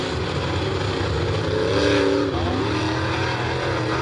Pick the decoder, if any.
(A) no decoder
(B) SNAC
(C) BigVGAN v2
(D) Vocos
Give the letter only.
A